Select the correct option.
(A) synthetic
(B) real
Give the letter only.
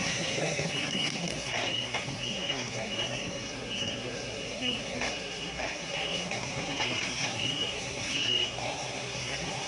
A